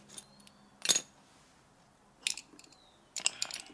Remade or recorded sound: recorded